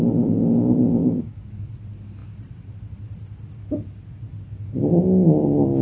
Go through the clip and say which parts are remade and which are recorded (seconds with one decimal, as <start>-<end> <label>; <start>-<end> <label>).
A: 0.0-1.0 recorded; 1.0-1.5 remade; 1.5-5.8 recorded